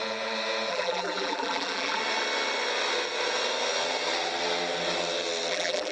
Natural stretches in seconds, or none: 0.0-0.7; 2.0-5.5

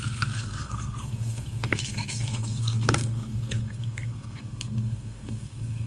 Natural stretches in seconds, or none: none